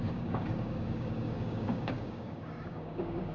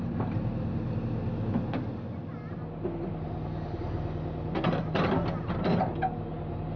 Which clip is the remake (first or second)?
first